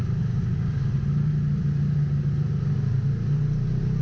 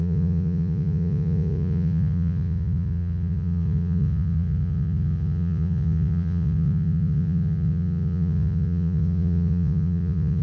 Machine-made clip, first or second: second